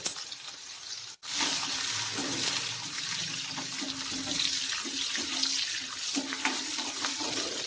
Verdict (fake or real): real